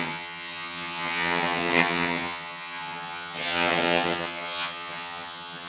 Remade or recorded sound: remade